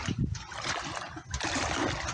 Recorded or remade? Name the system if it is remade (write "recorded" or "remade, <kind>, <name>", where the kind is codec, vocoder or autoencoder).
recorded